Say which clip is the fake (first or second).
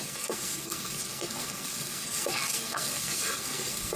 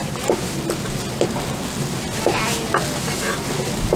first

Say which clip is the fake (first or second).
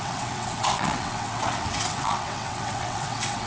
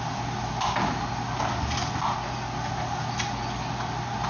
first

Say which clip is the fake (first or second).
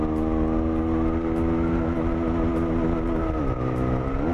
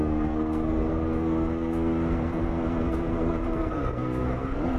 second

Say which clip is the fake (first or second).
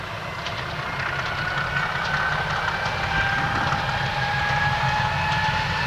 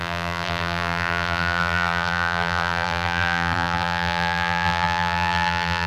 second